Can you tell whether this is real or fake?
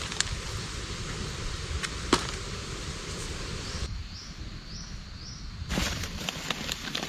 real